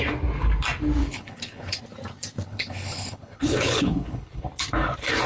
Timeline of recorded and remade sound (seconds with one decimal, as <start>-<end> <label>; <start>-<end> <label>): 0.0-1.0 recorded; 1.0-1.8 remade; 1.8-2.5 recorded; 2.5-4.5 remade; 4.5-5.3 recorded